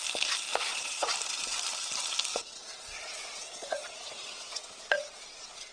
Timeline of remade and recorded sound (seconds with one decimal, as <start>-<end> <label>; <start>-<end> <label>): 0.0-0.5 recorded; 0.5-1.1 remade; 1.1-2.3 recorded; 2.3-5.7 remade